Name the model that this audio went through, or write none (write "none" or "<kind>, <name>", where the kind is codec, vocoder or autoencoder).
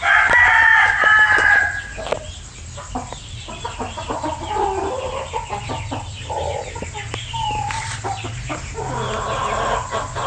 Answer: none